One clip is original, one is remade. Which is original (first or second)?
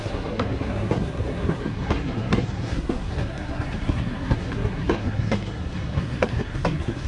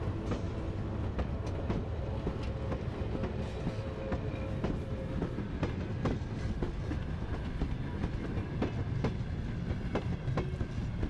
second